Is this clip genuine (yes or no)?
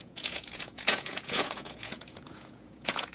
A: no